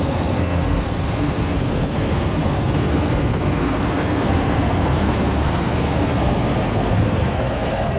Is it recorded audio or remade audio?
remade